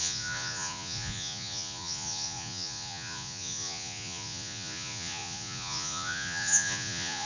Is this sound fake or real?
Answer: fake